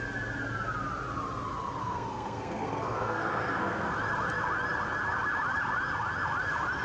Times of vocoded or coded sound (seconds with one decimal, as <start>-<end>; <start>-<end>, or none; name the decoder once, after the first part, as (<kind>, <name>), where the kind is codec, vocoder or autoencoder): 1.8-3.9 (codec, SNAC)

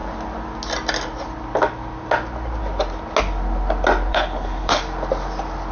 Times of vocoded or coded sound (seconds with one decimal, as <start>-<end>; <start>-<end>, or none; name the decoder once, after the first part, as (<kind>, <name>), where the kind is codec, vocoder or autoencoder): 4.1-4.8 (codec, HILCodec)

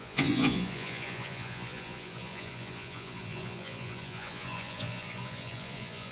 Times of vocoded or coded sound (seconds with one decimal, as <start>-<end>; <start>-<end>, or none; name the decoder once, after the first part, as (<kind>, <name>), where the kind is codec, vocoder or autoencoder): 0.0-6.1 (vocoder, Vocos)

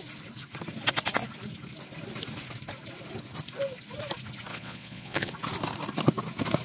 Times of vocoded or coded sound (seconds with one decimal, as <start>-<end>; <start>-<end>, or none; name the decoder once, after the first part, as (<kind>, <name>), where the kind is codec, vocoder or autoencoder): 4.5-5.3 (vocoder, Vocos)

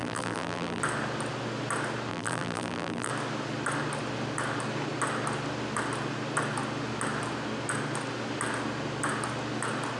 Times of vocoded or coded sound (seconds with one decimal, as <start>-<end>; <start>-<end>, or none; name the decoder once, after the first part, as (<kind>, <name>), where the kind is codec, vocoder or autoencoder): 0.0-0.8 (vocoder, BigVGAN v2); 2.1-3.1

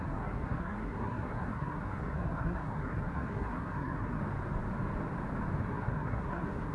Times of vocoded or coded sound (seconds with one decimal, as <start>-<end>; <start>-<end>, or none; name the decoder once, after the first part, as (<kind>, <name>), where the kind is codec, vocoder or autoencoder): 0.0-4.2 (codec, SNAC); 5.6-6.7